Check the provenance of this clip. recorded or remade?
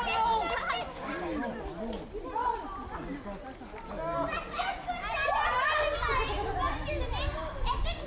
recorded